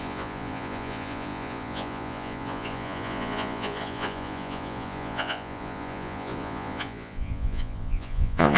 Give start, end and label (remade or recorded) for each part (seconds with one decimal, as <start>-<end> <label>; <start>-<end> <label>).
0.0-8.6 remade